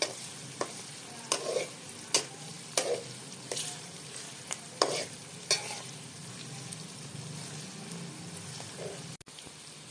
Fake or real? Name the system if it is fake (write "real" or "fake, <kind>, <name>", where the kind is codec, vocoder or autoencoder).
real